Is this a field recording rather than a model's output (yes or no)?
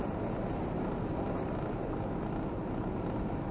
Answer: yes